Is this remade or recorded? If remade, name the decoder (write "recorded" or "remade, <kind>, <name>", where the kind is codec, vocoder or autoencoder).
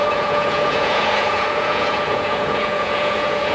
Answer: remade, vocoder, Vocos